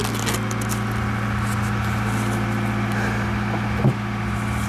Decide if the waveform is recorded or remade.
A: recorded